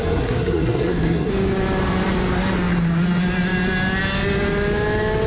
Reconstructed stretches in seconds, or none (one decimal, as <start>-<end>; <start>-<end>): 0.0-1.3